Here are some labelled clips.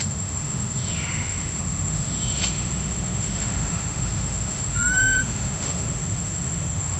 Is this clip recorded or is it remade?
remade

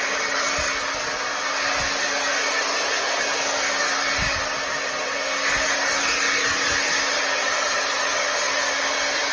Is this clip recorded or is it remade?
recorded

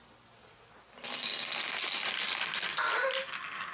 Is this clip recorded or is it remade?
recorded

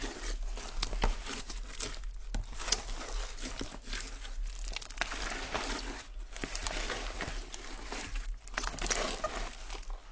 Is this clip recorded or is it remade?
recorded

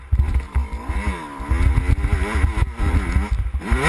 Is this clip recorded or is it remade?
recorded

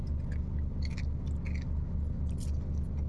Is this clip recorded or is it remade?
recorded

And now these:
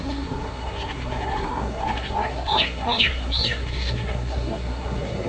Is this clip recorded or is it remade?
remade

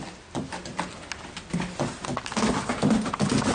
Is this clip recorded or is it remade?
recorded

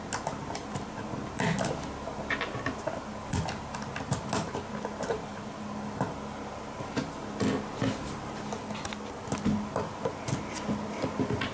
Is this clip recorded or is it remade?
recorded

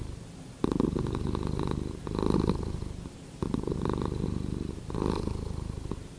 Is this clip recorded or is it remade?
recorded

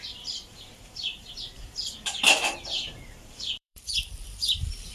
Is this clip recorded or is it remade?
remade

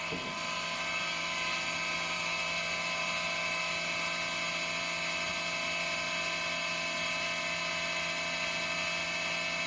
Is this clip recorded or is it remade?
recorded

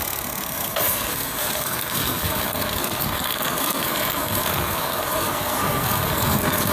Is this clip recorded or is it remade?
remade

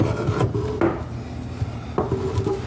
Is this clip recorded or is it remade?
recorded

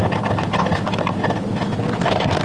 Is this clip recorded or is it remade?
recorded